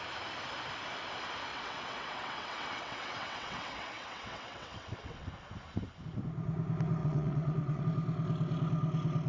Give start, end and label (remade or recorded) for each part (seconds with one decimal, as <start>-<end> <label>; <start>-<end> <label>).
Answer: 0.0-1.5 recorded; 1.5-5.3 remade; 5.3-7.0 recorded; 7.0-7.8 remade; 7.8-9.3 recorded